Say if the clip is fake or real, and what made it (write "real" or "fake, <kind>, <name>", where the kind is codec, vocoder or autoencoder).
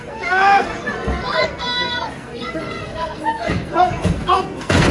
fake, codec, SNAC